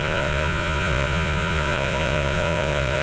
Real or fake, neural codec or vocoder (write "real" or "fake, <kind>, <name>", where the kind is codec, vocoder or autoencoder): fake, vocoder, Vocos